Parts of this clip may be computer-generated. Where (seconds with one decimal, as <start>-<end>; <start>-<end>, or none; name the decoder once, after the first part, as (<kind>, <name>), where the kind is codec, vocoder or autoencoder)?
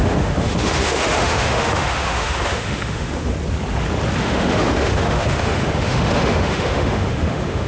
0.0-3.3 (autoencoder, DAC-VAE); 4.2-7.7